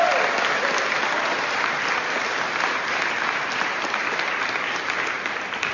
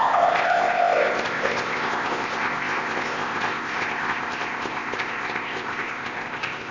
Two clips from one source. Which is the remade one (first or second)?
second